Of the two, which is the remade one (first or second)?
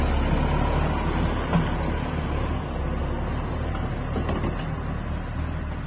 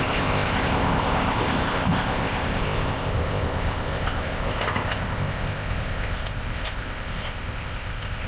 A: second